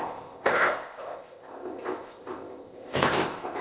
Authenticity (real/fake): fake